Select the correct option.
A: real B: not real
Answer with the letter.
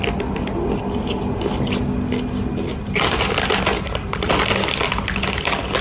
A